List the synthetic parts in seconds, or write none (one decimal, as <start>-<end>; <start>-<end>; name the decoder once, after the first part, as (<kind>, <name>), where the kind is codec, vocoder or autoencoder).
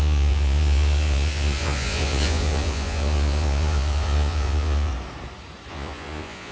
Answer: 0.0-4.9 (vocoder, Vocos); 5.7-6.5